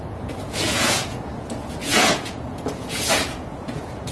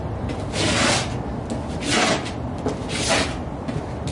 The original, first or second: second